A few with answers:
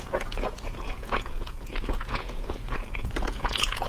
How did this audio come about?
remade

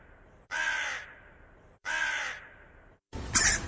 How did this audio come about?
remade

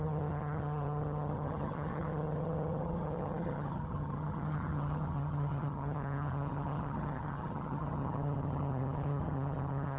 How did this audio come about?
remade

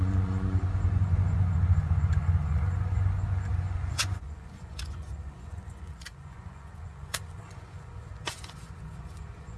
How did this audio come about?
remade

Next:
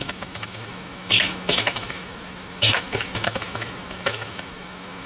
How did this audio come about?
remade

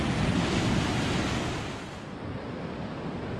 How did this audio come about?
recorded